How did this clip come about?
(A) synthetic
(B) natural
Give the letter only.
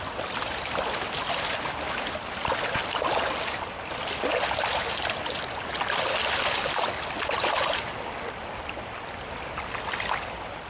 B